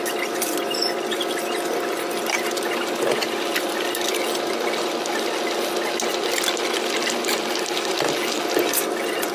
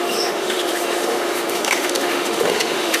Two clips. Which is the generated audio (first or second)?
second